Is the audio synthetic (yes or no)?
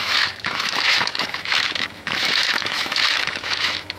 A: yes